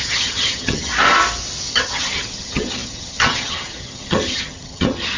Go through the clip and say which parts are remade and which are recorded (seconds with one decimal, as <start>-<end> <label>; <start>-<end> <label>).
0.0-0.9 remade; 0.9-1.7 recorded; 1.7-5.2 remade